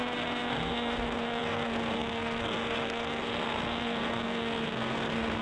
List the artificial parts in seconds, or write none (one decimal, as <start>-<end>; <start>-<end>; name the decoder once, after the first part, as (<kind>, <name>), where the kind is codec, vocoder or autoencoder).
0.0-5.4 (codec, SNAC)